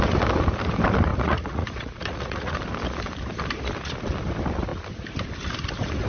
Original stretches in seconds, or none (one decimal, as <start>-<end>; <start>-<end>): 0.0-1.1; 2.5-6.1